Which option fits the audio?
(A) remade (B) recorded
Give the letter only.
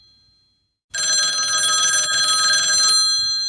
B